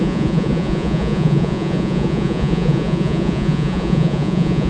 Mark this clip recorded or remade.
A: remade